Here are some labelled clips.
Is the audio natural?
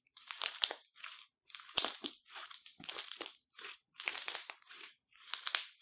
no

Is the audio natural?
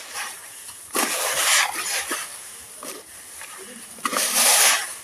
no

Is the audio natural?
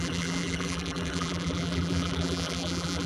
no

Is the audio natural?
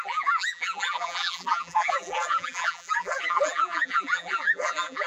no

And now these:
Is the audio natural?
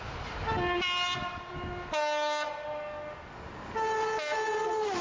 yes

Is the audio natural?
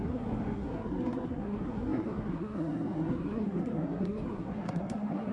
no